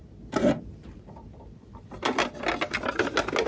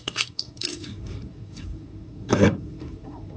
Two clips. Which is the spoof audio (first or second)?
second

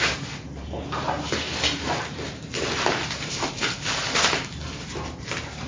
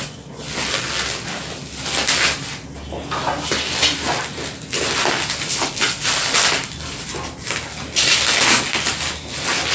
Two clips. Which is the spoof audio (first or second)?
first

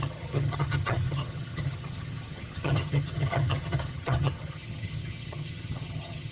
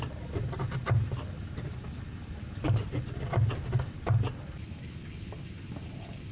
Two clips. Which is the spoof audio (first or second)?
first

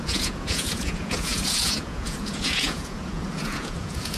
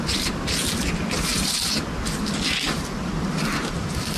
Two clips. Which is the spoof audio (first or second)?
first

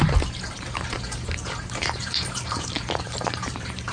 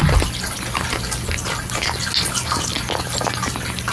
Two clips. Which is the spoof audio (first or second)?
first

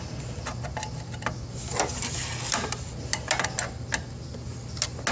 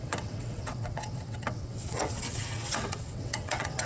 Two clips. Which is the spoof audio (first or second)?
second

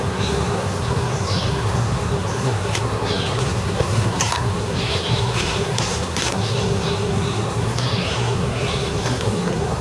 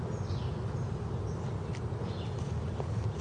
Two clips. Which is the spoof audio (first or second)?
first